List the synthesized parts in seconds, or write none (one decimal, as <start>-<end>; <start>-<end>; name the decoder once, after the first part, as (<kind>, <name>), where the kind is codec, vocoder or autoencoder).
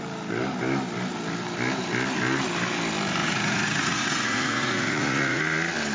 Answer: 3.2-5.4 (vocoder, Vocos)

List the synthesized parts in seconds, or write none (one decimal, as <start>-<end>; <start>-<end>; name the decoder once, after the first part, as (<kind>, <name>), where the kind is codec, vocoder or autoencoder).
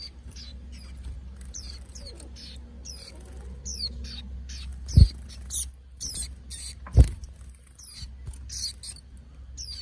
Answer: none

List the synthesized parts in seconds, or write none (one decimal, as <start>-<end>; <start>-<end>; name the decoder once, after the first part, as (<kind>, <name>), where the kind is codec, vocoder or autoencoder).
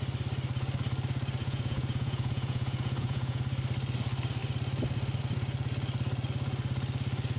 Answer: 1.4-3.4 (vocoder, Vocos)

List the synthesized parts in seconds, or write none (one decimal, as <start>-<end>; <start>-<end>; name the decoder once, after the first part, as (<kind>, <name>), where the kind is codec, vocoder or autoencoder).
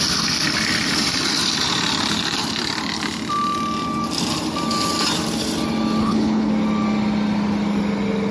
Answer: 6.0-6.5 (codec, HILCodec)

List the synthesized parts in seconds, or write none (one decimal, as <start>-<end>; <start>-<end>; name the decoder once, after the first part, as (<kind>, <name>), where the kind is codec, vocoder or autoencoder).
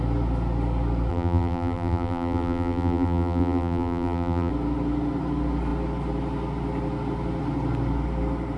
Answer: 1.1-4.5 (vocoder, BigVGAN v2)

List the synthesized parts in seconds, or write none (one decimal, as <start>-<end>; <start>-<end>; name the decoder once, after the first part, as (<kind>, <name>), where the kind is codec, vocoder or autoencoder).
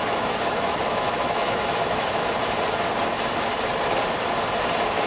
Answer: 0.0-2.2 (autoencoder, DAC-VAE)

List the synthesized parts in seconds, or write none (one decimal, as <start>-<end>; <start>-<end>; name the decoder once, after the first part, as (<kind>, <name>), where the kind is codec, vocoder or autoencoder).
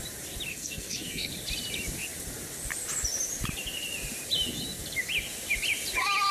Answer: 0.5-1.3 (codec, SNAC)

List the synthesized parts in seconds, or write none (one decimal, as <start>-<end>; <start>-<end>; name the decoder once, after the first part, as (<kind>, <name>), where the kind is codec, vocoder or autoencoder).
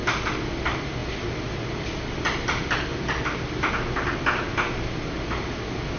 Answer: none